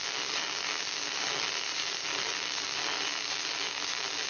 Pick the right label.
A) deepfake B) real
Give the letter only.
B